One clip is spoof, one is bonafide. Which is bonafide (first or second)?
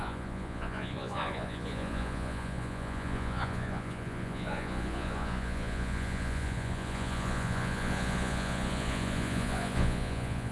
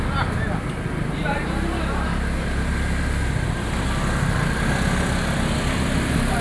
second